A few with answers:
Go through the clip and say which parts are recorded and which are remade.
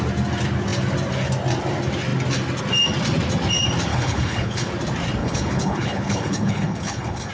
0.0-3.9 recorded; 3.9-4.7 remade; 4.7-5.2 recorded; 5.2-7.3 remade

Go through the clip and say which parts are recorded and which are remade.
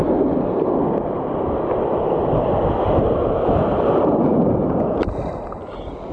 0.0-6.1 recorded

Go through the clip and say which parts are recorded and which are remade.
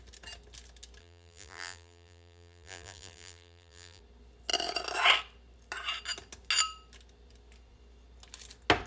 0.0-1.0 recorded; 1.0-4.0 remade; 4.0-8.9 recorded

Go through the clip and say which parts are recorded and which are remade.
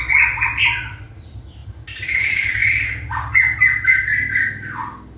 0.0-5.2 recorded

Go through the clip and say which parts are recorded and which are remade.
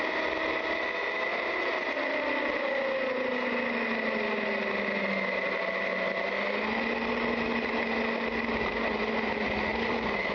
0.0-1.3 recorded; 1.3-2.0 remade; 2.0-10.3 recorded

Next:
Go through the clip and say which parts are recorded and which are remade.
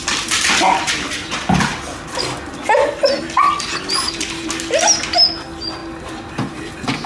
0.0-7.1 recorded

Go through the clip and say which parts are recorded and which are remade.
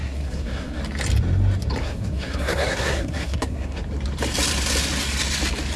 0.0-0.8 remade; 0.8-1.8 recorded; 1.8-3.8 remade; 3.8-5.8 recorded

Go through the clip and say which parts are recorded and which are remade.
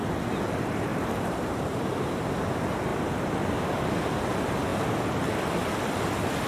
0.0-0.9 recorded; 0.9-2.4 remade; 2.4-6.5 recorded